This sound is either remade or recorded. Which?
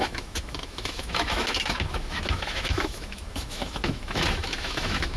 remade